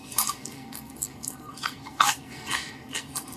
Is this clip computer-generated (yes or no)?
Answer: yes